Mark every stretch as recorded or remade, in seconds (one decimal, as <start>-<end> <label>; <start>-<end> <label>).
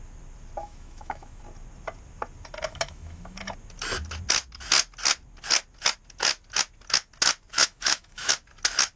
0.0-0.6 recorded; 0.6-1.4 remade; 1.4-2.7 recorded; 2.7-3.4 remade; 3.4-7.5 recorded; 7.5-8.3 remade; 8.3-9.0 recorded